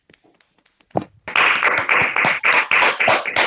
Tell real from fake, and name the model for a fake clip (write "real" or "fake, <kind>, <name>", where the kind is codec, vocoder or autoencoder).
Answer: real